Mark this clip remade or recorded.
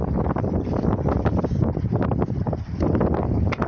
recorded